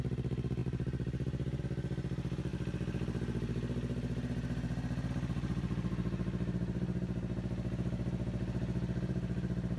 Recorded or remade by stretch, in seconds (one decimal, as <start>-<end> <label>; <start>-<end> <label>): 0.0-0.6 recorded; 0.6-1.6 remade; 1.6-9.8 recorded